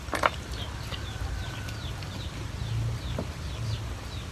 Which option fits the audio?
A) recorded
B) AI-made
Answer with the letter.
A